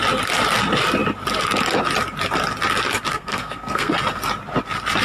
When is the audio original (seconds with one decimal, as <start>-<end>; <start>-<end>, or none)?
0.0-3.1; 3.9-5.0